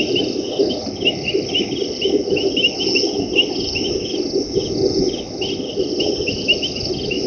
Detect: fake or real real